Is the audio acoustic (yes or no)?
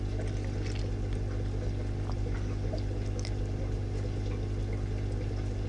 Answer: yes